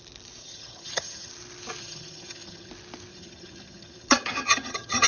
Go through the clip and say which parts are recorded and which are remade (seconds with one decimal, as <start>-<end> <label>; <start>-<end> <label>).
0.0-0.4 recorded; 0.4-1.3 remade; 1.3-1.8 recorded; 1.8-2.7 remade; 2.7-3.1 recorded; 3.1-5.1 remade